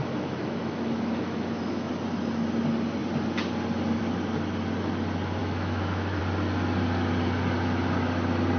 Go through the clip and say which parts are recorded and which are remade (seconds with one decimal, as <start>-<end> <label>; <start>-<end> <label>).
0.0-1.9 remade; 1.9-5.4 recorded; 5.4-6.2 remade; 6.2-8.6 recorded